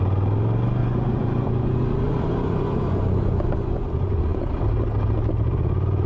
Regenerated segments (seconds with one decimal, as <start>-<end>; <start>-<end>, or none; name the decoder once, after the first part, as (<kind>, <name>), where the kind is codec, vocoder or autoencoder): 0.8-4.5 (vocoder, Vocos)